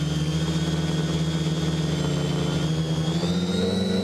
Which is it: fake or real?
real